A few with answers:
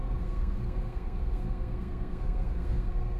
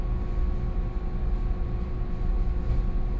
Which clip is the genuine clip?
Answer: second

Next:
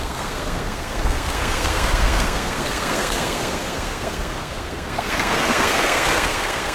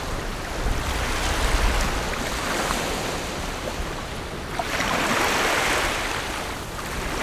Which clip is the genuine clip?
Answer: second